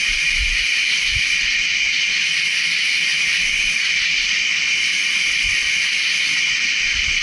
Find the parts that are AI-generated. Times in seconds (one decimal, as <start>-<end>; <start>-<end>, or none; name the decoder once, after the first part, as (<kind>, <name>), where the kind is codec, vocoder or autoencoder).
3.1-4.3 (vocoder, BigVGAN v2)